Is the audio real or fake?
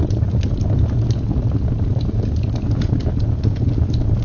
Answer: real